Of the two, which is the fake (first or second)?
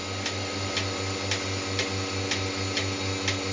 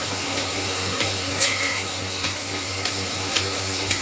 second